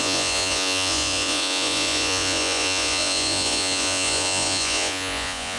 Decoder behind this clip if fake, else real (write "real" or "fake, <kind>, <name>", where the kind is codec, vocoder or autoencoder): fake, vocoder, Vocos